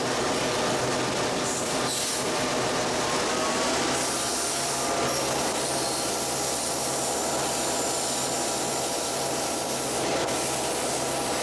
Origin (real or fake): real